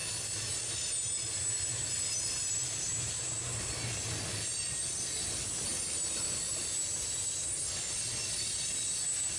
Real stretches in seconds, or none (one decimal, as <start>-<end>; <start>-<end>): 0.0-9.4